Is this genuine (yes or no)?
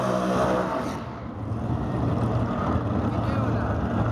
yes